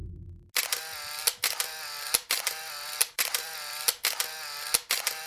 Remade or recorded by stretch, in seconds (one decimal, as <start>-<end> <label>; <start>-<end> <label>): 0.0-0.5 remade; 0.5-1.2 recorded; 1.2-4.1 remade; 4.1-5.3 recorded